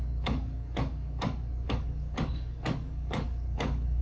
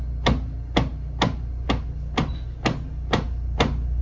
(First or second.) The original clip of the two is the second